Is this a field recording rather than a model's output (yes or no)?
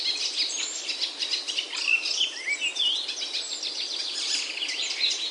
yes